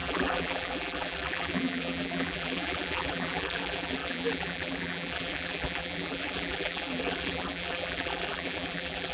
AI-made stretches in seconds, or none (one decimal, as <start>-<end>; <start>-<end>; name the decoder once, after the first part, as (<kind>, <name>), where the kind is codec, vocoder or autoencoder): 0.0-9.1 (vocoder, BigVGAN v2)